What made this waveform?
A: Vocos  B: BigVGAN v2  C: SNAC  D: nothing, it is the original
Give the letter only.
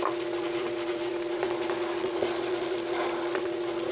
A